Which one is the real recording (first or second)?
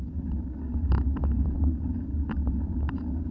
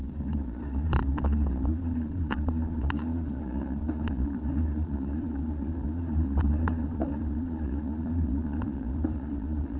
first